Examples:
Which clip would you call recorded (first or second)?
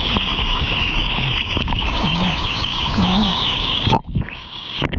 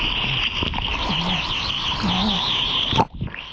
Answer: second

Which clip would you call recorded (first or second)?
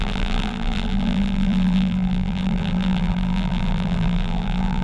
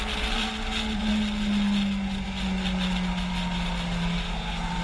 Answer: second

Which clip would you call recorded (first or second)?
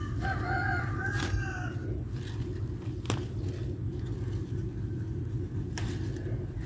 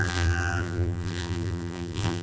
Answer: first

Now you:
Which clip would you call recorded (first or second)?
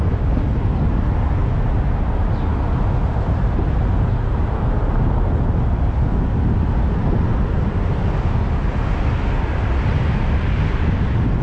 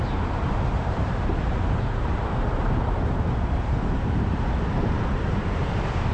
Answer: first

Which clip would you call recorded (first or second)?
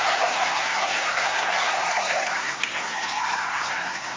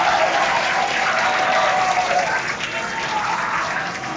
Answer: second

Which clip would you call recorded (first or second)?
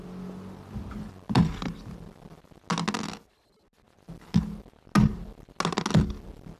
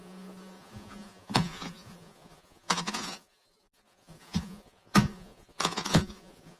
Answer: first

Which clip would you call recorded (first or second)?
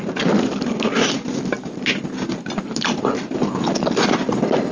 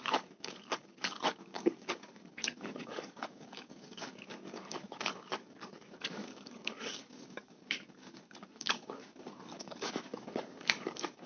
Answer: first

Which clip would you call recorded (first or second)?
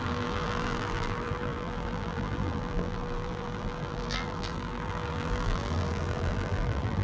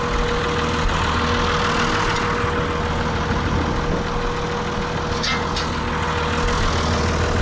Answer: second